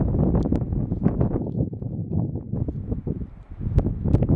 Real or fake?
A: real